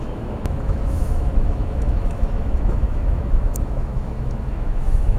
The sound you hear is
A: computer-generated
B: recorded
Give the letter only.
A